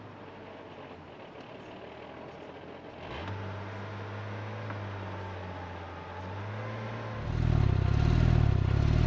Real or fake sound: real